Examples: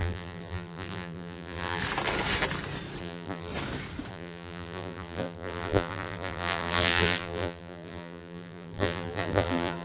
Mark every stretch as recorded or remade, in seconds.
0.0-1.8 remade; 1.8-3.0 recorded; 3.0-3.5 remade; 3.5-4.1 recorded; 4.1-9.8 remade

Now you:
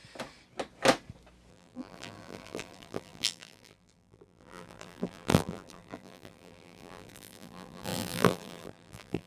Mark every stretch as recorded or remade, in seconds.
0.0-1.5 recorded; 1.5-9.3 remade

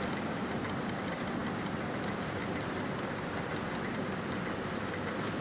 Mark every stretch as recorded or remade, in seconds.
0.0-5.4 remade

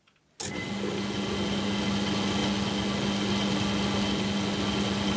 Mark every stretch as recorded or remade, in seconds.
0.0-5.2 recorded

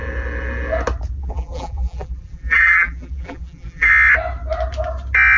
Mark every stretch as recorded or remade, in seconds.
0.0-1.2 recorded; 1.2-3.9 remade; 3.9-5.4 recorded

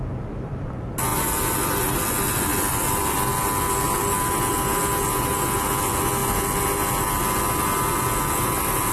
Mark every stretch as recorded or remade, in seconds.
0.0-1.1 recorded; 1.1-2.0 remade; 2.0-2.5 recorded; 2.5-3.3 remade; 3.3-8.9 recorded

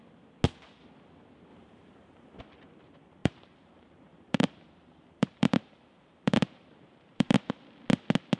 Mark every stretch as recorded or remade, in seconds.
0.0-1.5 recorded; 1.5-2.4 remade; 2.4-3.2 recorded; 3.2-7.5 remade; 7.5-8.4 recorded